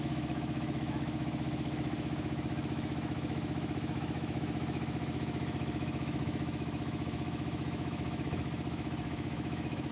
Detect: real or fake fake